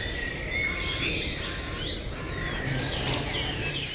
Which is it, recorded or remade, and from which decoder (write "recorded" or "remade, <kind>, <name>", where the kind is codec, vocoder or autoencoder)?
recorded